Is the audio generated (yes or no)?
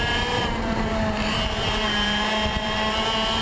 yes